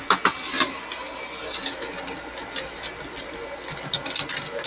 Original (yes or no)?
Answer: yes